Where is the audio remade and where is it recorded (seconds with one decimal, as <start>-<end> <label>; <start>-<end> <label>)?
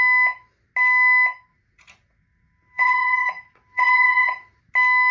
0.0-1.5 recorded; 1.5-4.6 remade; 4.6-5.1 recorded